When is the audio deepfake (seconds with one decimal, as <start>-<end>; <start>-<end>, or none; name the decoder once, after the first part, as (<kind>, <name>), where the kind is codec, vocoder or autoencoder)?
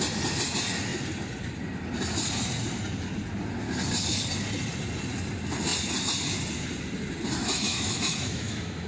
7.4-8.9 (autoencoder, DAC-VAE)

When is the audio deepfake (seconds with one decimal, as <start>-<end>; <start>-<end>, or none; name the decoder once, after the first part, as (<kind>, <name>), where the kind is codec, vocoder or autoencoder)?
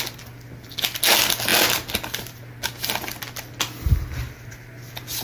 none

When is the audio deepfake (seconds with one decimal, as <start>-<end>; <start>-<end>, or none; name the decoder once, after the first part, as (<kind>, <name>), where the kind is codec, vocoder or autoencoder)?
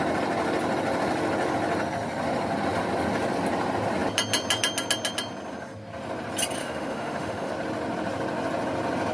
6.6-7.5 (autoencoder, DAC-VAE)